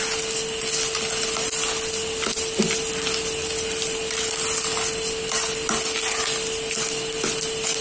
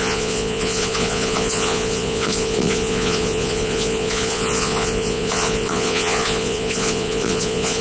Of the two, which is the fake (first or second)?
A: second